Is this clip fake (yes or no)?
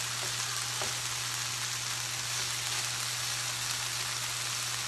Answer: no